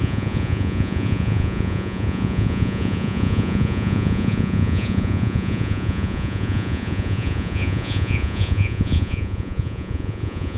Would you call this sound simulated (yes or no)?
yes